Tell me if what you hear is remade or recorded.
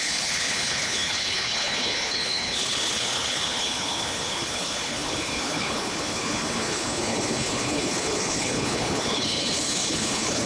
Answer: remade